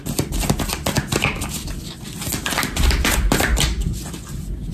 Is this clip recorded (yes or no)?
yes